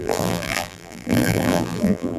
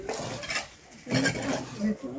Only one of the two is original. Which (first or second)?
second